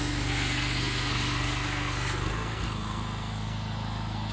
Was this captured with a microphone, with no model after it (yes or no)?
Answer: no